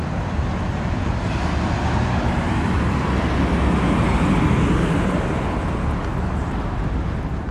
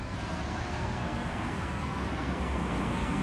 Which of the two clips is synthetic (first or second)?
second